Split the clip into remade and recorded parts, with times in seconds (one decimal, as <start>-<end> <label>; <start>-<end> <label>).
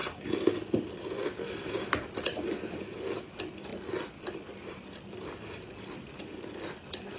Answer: 0.0-7.2 recorded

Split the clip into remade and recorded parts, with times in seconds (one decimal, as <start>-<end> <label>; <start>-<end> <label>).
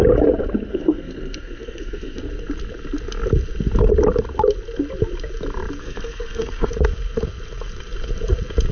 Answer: 0.0-0.7 recorded; 0.7-2.2 remade; 2.2-5.8 recorded; 5.8-6.7 remade; 6.7-8.7 recorded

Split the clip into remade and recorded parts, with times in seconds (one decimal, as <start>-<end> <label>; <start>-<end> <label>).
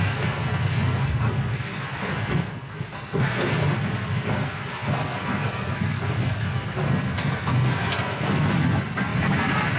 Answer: 0.0-9.8 remade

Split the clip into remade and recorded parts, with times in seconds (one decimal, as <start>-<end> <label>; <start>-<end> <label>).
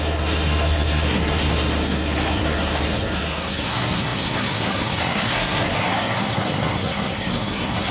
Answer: 0.0-7.9 remade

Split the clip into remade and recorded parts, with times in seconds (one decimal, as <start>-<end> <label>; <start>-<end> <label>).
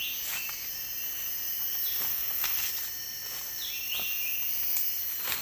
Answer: 0.0-2.1 recorded; 2.1-2.7 remade; 2.7-5.4 recorded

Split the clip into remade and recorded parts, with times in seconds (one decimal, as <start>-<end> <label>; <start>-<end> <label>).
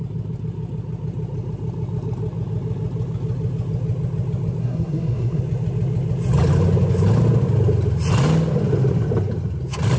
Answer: 0.0-4.6 recorded; 4.6-5.4 remade; 5.4-10.0 recorded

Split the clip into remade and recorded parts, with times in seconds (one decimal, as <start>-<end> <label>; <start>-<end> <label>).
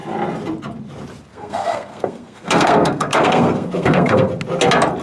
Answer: 0.0-1.3 recorded; 1.3-4.3 remade; 4.3-5.0 recorded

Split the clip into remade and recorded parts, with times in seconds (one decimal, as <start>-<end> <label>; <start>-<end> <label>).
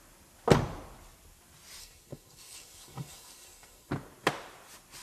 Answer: 0.0-1.8 recorded; 1.8-3.9 remade; 3.9-5.0 recorded